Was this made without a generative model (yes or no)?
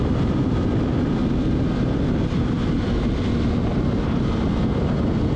yes